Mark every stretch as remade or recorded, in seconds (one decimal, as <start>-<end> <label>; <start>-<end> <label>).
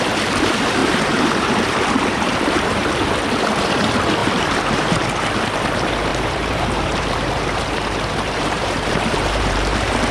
0.0-0.8 recorded; 0.8-3.1 remade; 3.1-4.2 recorded; 4.2-4.9 remade; 4.9-6.1 recorded; 6.1-10.1 remade